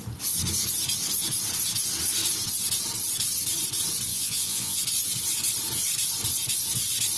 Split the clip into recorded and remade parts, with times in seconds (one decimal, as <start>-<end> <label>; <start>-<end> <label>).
0.0-4.1 recorded; 4.1-4.8 remade; 4.8-7.2 recorded